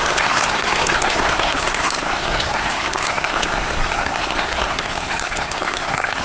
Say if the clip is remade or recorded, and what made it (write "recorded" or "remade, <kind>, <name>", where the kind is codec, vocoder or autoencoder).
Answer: remade, codec, SNAC